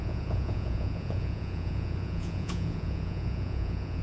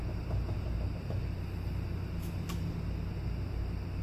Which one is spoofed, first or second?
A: first